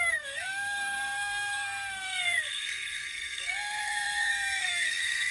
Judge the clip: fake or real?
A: fake